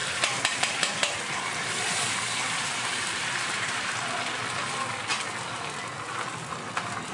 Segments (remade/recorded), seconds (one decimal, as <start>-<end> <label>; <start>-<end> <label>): 0.0-4.1 remade; 4.1-7.1 recorded

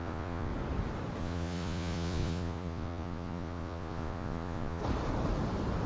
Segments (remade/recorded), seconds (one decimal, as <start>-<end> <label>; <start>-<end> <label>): 0.0-0.5 remade; 0.5-1.2 recorded; 1.2-4.8 remade; 4.8-5.9 recorded

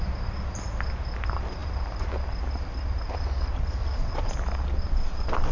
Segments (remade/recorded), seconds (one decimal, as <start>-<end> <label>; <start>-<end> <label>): 0.0-3.8 recorded; 3.8-4.3 remade; 4.3-5.5 recorded